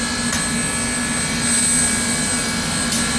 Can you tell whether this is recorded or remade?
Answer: recorded